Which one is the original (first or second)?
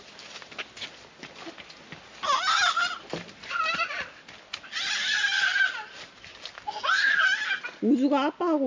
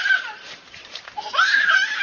first